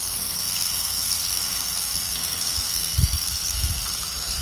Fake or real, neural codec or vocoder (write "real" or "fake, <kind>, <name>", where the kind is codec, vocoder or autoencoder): fake, codec, SNAC